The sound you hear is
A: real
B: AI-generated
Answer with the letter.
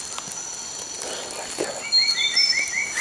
A